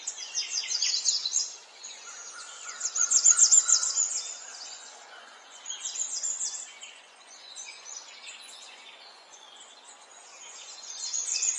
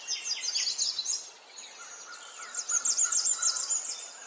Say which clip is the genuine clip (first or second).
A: second